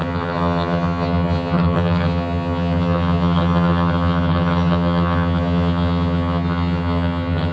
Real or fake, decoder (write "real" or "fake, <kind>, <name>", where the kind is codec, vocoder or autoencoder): fake, vocoder, HiFi-GAN